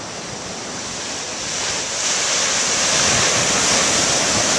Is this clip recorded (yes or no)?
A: yes